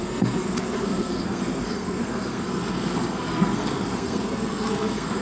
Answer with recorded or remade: remade